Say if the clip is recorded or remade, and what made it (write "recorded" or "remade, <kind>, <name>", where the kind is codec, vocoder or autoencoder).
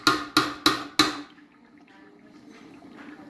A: recorded